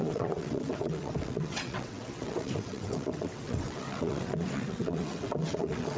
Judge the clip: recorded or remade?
remade